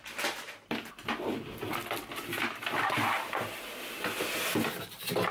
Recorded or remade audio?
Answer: recorded